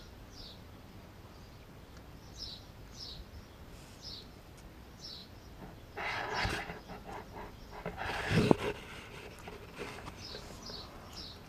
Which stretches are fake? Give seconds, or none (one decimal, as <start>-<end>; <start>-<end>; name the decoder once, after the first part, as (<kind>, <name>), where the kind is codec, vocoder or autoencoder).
none